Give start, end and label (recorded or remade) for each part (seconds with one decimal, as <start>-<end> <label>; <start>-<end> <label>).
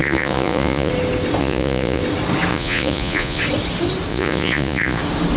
0.0-0.9 remade; 0.9-1.4 recorded; 1.4-2.0 remade; 2.0-2.5 recorded; 2.5-3.4 remade; 3.4-4.1 recorded; 4.1-5.0 remade; 5.0-5.4 recorded